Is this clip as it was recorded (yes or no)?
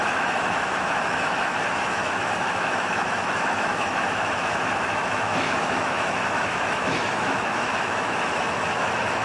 no